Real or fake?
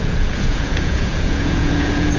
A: fake